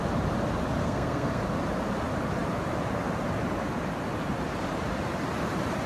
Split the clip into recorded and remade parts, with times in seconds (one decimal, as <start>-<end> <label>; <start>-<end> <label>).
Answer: 0.0-0.8 recorded; 0.8-1.4 remade; 1.4-5.9 recorded